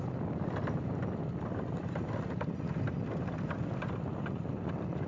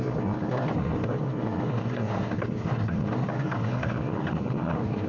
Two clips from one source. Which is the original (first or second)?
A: first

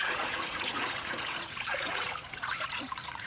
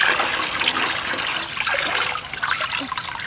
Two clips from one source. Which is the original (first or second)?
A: second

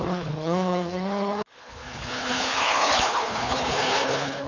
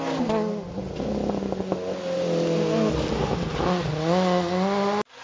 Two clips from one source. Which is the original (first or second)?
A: second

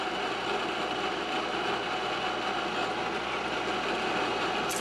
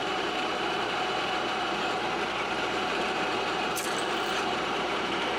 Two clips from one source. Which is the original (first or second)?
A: first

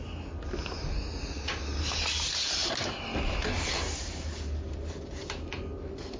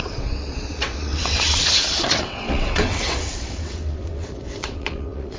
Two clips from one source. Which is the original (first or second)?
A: first